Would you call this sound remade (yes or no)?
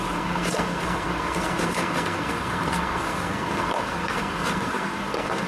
yes